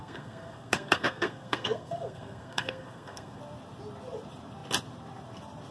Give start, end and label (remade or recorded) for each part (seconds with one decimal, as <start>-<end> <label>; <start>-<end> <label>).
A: 0.0-3.4 remade; 3.4-5.7 recorded